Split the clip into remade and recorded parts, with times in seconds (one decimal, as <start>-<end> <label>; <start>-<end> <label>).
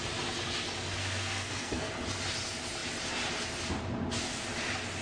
0.0-1.0 recorded; 1.0-1.9 remade; 1.9-5.0 recorded